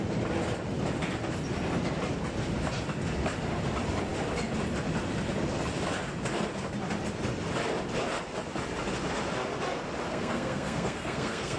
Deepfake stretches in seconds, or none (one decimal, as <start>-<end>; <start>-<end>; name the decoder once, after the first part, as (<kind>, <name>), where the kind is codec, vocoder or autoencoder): 10.1-11.6 (codec, SNAC)